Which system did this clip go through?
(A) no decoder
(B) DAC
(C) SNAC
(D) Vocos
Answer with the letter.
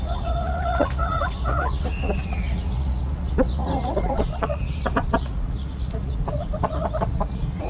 D